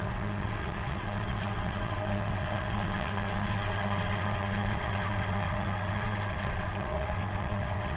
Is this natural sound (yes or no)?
no